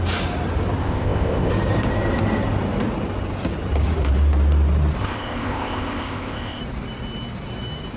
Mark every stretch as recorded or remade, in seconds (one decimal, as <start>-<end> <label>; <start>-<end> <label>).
0.0-0.8 recorded; 0.8-1.5 remade; 1.5-5.0 recorded; 5.0-6.6 remade; 6.6-8.0 recorded